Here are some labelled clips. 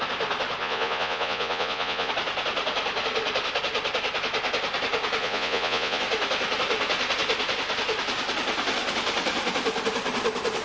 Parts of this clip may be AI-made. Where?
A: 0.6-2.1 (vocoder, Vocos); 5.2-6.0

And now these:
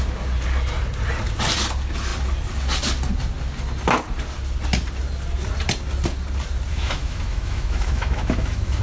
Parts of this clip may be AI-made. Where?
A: 6.7-8.8 (autoencoder, DAC-VAE)

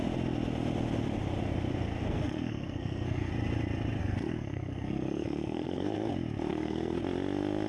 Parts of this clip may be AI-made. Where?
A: 2.0-3.3 (codec, SNAC); 4.0-6.1; 6.5-7.0

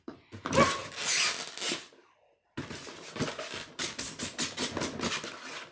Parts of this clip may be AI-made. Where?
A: none

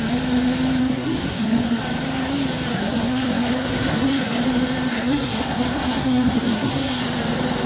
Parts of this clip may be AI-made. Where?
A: 0.8-1.8 (codec, SNAC); 2.7-4.4; 4.9-7.0